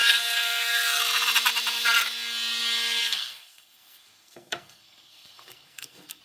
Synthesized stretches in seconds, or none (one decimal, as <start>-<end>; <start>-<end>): 0.0-1.0; 3.0-6.2